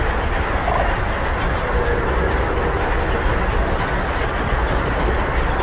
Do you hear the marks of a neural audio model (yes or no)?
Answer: no